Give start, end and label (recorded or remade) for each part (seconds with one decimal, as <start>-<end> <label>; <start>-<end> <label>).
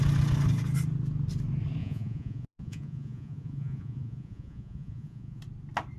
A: 0.0-1.8 recorded; 1.8-5.4 remade; 5.4-6.0 recorded